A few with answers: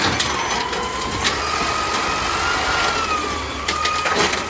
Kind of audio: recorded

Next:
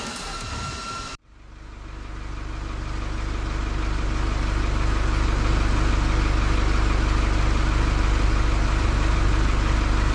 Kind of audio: recorded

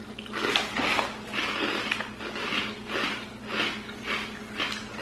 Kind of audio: recorded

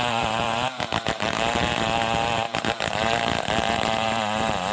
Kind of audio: remade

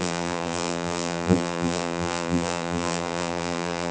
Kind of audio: remade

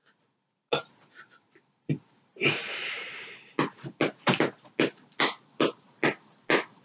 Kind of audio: recorded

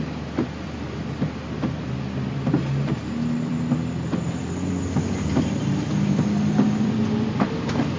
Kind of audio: remade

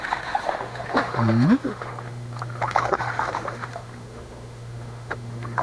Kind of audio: remade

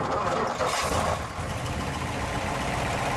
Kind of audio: recorded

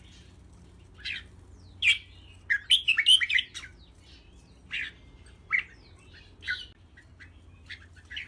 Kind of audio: recorded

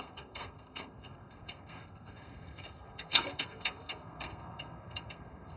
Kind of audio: remade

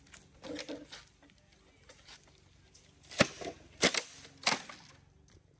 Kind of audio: recorded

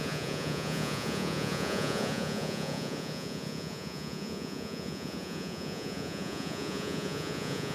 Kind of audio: remade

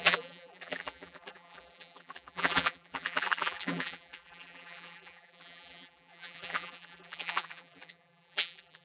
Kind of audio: remade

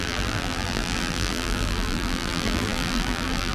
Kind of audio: remade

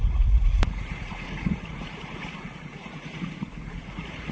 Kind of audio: remade